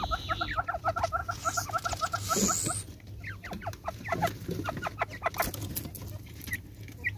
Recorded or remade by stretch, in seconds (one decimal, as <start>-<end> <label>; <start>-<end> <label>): 0.0-7.2 recorded